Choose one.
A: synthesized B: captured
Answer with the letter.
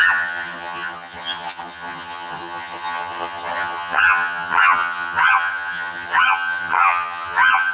A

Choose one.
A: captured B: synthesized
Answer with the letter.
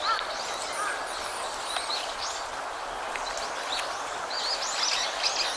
A